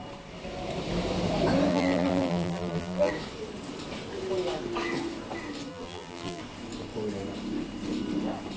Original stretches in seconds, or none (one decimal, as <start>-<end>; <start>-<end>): 0.0-1.7; 3.1-5.7; 6.4-8.6